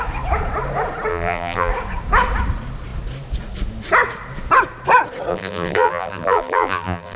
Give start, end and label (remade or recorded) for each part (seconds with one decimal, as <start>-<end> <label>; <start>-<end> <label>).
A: 0.0-1.1 recorded; 1.1-1.7 remade; 1.7-5.3 recorded; 5.3-7.2 remade